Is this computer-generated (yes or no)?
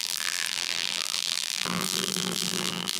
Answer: yes